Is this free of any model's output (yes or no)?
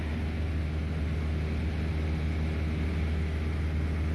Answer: yes